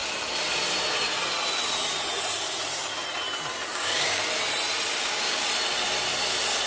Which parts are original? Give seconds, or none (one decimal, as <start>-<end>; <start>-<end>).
0.0-3.7; 4.2-4.9; 5.4-6.7